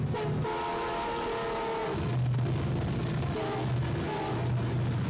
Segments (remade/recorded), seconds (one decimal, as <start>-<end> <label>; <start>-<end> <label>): 0.0-5.1 recorded

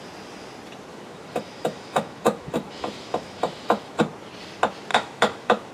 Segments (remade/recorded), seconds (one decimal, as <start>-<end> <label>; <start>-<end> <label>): 0.0-0.9 recorded; 0.9-4.0 remade; 4.0-4.9 recorded; 4.9-5.7 remade

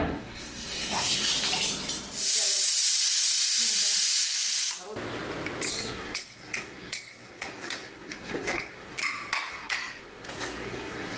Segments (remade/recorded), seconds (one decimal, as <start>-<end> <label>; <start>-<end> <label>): 0.0-1.3 remade; 1.3-5.7 recorded; 5.7-9.0 remade; 9.0-9.5 recorded; 9.5-11.2 remade

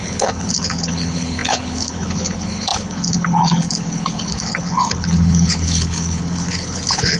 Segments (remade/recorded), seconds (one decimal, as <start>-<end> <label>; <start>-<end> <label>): 0.0-7.2 remade

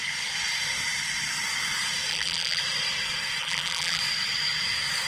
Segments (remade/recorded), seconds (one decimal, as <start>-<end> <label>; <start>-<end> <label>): 0.0-2.1 recorded; 2.1-2.6 remade; 2.6-3.4 recorded; 3.4-4.0 remade; 4.0-5.1 recorded